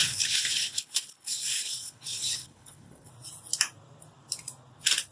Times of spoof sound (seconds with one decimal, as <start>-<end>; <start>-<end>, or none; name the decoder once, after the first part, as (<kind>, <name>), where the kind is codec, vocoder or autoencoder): 0.0-3.1 (codec, HILCodec)